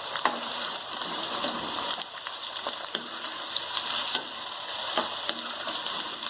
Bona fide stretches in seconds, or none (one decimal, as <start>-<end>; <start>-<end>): 3.1-4.1